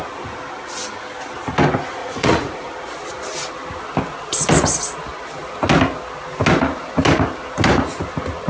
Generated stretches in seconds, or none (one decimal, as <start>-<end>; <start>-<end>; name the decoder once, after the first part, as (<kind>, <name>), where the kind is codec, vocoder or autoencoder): 2.0-2.7 (vocoder, Vocos)